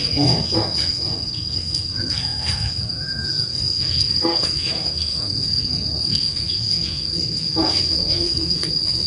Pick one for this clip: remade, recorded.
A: remade